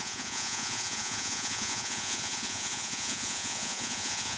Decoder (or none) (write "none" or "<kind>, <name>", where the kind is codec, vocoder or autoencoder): vocoder, Vocos